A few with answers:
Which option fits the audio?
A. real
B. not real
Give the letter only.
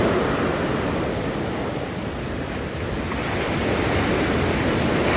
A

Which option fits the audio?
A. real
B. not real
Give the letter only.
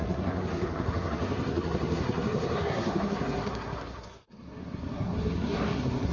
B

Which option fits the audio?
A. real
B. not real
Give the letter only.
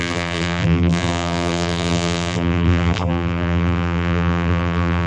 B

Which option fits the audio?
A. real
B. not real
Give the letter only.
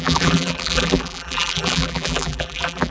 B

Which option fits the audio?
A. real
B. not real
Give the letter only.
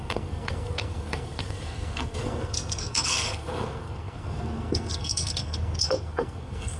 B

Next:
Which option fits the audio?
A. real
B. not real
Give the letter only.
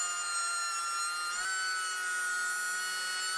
A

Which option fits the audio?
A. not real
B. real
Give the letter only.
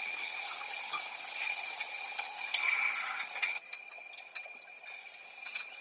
A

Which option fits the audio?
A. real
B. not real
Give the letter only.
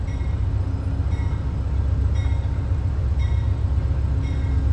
A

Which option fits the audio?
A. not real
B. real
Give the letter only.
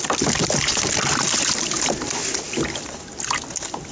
B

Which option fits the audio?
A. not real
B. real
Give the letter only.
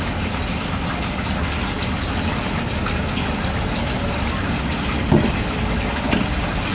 B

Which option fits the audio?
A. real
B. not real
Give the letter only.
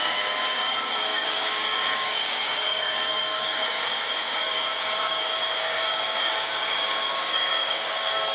B